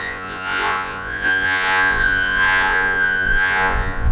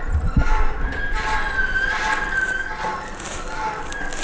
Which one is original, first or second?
second